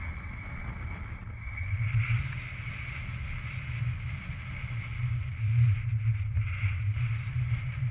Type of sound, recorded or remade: recorded